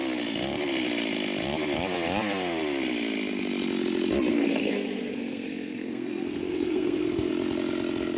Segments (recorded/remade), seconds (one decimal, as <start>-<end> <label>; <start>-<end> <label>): 0.0-4.3 recorded; 4.3-7.3 remade; 7.3-8.2 recorded